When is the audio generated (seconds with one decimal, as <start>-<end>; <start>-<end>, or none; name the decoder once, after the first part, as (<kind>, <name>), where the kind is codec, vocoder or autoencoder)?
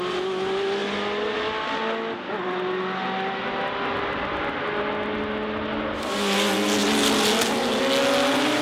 none